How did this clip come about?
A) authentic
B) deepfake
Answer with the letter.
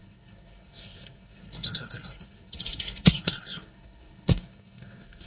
B